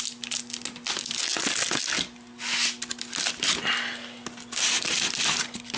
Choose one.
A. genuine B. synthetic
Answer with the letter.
A